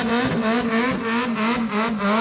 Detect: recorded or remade recorded